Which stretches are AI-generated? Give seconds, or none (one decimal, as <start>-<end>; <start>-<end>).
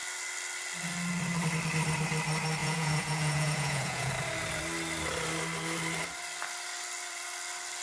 2.6-4.1